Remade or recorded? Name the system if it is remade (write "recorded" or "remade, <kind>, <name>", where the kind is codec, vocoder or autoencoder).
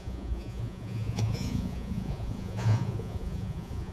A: remade, vocoder, Vocos